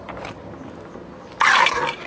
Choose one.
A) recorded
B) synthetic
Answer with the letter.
A